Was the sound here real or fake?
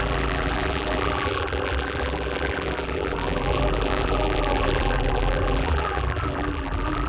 fake